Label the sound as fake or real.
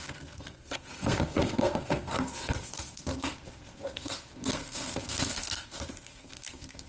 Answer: fake